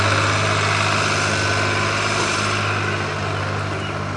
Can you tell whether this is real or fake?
real